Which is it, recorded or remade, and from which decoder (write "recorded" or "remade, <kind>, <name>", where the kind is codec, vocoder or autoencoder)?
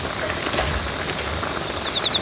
recorded